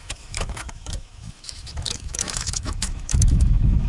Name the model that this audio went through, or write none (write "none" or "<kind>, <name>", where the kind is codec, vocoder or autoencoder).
autoencoder, DAC-VAE